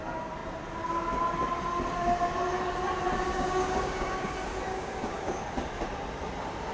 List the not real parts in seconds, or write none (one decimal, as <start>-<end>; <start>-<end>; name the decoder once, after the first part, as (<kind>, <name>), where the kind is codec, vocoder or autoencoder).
3.3-4.3 (codec, DAC); 4.7-5.4